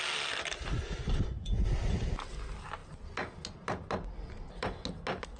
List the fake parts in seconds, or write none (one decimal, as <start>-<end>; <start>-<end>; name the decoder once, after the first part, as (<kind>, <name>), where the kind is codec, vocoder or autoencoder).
none